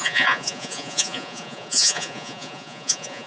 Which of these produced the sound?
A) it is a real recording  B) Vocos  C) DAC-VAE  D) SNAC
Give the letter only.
B